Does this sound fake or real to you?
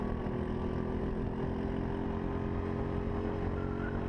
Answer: real